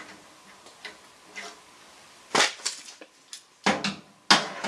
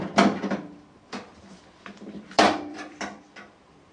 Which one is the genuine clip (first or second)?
first